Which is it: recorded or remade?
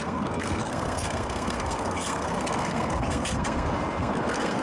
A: remade